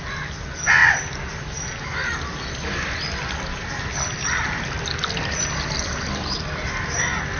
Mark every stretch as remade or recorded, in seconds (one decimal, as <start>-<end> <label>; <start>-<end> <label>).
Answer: 0.0-7.4 recorded